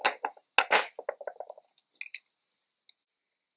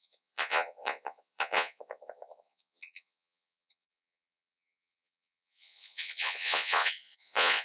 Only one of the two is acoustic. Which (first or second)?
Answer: first